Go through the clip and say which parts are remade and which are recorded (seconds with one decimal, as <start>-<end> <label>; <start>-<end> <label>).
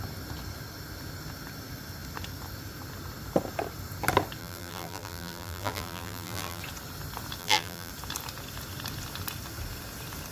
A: 0.0-4.4 recorded; 4.4-6.6 remade; 6.6-7.4 recorded; 7.4-7.9 remade; 7.9-10.3 recorded